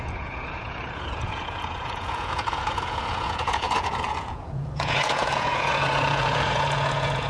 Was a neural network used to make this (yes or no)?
yes